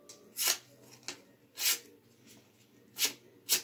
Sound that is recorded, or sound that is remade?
recorded